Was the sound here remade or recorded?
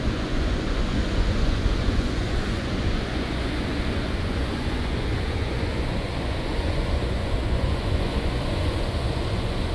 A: remade